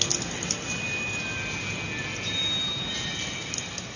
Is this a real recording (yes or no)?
yes